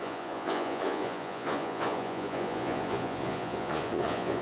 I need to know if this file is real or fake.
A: fake